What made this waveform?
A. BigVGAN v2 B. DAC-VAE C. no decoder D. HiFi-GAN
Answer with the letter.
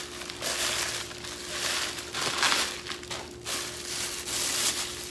C